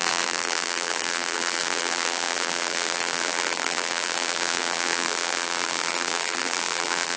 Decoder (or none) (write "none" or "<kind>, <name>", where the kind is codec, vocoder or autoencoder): vocoder, BigVGAN v2